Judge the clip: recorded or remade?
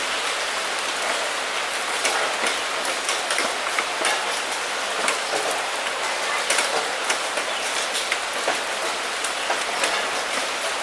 recorded